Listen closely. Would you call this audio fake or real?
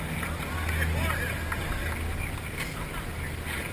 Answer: real